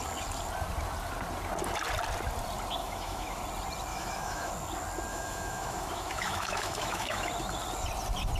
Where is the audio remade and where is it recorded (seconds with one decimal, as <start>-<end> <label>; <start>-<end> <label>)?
0.0-2.8 recorded; 2.8-3.4 remade; 3.4-3.9 recorded; 3.9-4.5 remade; 4.5-5.1 recorded; 5.1-7.3 remade; 7.3-8.4 recorded